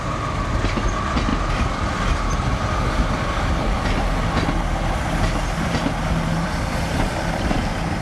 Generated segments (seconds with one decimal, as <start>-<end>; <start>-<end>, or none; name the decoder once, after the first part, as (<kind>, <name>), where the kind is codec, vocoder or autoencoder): none